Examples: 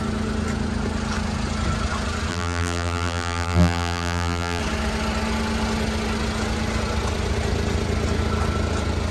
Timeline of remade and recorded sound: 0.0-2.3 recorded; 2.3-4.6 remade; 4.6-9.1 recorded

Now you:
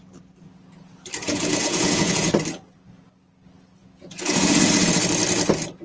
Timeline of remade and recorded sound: 0.0-1.2 recorded; 1.2-2.3 remade; 2.3-3.8 recorded; 3.8-5.0 remade; 5.0-5.8 recorded

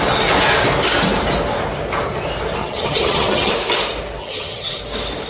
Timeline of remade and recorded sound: 0.0-2.6 recorded; 2.6-3.5 remade; 3.5-4.2 recorded; 4.2-4.8 remade; 4.8-5.3 recorded